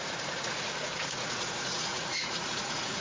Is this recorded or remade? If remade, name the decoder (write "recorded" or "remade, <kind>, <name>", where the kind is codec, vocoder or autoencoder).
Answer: remade, vocoder, Vocos